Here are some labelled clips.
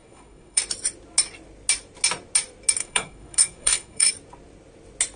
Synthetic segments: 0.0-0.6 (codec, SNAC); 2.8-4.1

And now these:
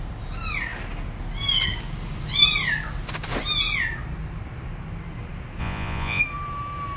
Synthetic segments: 5.6-6.2 (vocoder, Vocos)

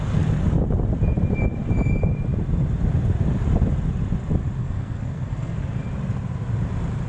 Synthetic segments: 4.6-5.6 (codec, SNAC)